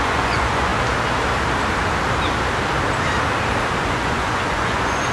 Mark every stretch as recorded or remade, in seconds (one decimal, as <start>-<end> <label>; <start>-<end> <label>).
0.0-0.7 remade; 0.7-3.8 recorded; 3.8-5.1 remade